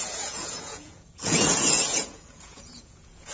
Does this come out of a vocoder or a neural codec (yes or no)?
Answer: yes